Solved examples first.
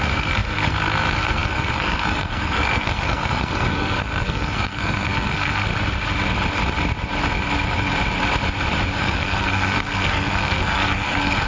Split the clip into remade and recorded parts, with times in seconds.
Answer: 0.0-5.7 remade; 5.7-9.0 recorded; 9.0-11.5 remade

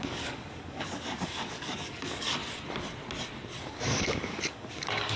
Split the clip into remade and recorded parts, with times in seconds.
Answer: 0.0-2.4 remade; 2.4-3.7 recorded; 3.7-5.2 remade

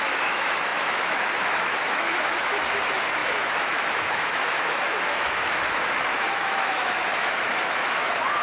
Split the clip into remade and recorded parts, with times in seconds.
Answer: 0.0-8.4 remade